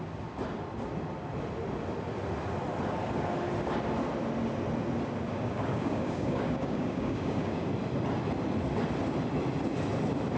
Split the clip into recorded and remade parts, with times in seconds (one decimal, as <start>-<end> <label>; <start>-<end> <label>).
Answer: 0.0-5.3 recorded; 5.3-7.7 remade; 7.7-10.4 recorded